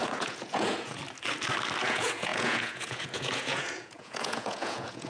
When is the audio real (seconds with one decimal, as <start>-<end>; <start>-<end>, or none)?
1.0-1.8